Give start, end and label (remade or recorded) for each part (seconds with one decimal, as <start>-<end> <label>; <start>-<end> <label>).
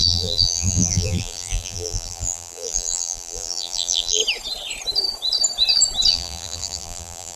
0.0-4.2 remade; 4.2-6.1 recorded; 6.1-7.4 remade